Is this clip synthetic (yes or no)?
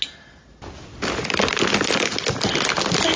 no